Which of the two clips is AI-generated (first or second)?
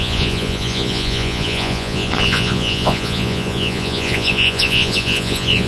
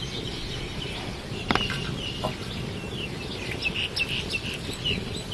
first